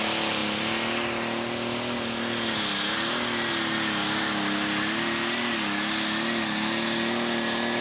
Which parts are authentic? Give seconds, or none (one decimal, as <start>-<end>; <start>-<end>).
0.0-7.8